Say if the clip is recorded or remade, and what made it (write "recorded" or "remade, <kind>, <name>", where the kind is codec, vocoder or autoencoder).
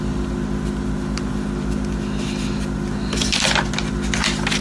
recorded